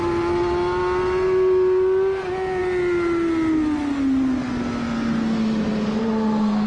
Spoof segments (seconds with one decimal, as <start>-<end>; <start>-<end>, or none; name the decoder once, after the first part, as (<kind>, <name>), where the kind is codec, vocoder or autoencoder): 6.0-6.7 (codec, SNAC)